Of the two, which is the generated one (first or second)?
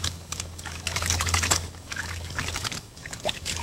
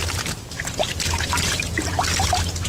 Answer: first